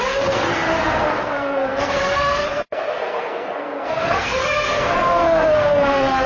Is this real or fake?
fake